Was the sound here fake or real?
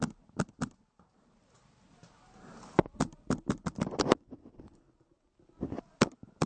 real